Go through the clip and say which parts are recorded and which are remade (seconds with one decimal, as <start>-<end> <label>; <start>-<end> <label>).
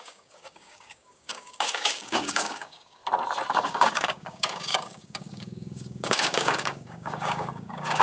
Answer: 0.0-3.0 remade; 3.0-3.5 recorded; 3.5-8.0 remade